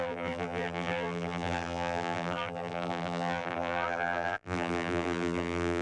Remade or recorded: remade